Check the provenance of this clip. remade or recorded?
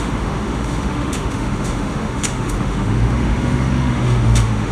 remade